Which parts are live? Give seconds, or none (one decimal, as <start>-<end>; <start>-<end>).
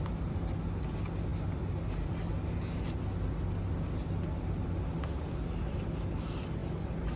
0.0-7.2